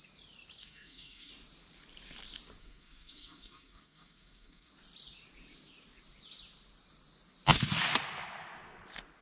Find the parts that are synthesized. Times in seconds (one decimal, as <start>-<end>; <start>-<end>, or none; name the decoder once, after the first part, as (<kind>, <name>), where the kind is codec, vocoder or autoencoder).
0.6-1.3 (codec, SNAC); 2.6-4.7

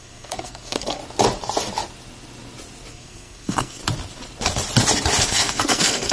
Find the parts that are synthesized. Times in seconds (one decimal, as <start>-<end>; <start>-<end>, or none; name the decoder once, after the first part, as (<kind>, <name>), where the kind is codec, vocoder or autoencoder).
0.0-1.0 (codec, SNAC); 2.9-3.8; 5.2-6.1

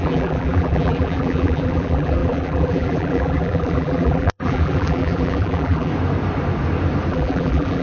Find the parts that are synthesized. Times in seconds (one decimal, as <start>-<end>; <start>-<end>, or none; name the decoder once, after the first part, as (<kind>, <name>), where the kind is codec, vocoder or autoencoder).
0.0-5.9 (vocoder, BigVGAN v2); 7.1-7.8

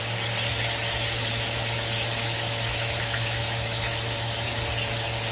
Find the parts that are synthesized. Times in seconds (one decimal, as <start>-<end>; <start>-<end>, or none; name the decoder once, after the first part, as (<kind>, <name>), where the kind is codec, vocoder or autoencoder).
1.3-4.5 (autoencoder, DAC-VAE)

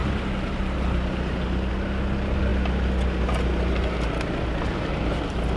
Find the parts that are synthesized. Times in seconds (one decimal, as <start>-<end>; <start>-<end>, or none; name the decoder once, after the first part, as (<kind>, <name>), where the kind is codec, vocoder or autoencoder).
none